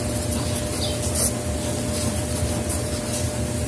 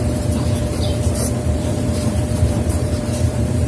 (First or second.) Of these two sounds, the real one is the first